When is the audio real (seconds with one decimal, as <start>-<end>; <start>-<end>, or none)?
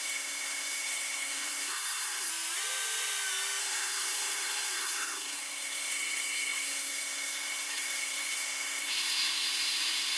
2.3-3.6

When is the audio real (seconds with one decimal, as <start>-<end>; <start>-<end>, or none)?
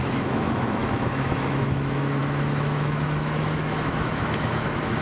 none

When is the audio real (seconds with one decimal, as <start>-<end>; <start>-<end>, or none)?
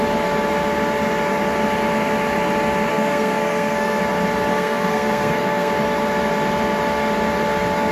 0.0-2.9; 4.0-4.5; 5.7-7.9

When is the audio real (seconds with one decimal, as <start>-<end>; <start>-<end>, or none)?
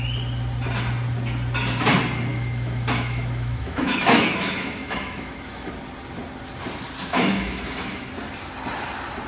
0.0-2.3; 5.7-7.0; 8.0-9.3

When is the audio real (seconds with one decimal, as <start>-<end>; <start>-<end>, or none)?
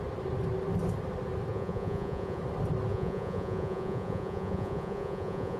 0.0-1.5; 2.4-2.9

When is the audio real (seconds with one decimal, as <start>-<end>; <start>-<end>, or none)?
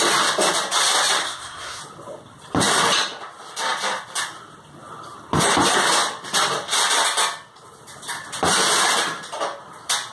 0.0-1.2; 1.8-10.1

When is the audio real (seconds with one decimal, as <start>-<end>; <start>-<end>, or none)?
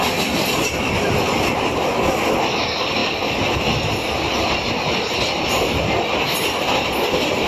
0.0-7.5